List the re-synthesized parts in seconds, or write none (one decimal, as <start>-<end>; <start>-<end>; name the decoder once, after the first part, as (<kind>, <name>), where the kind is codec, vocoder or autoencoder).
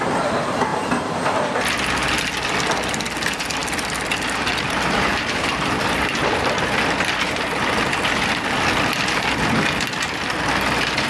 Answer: 0.7-2.2 (vocoder, BigVGAN v2); 5.1-6.2